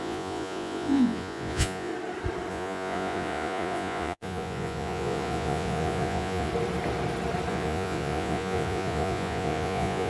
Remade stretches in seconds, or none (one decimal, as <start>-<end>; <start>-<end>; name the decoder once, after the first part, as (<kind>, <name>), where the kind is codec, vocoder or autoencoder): 0.0-1.9 (vocoder, Vocos); 2.5-6.5; 7.5-10.1